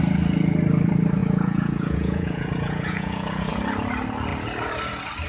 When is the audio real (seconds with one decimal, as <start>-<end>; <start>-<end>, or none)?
0.0-1.2; 3.5-5.3